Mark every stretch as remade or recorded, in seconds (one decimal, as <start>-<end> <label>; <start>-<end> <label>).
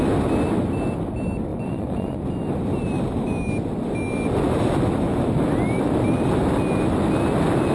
0.0-1.5 recorded; 1.5-2.2 remade; 2.2-7.7 recorded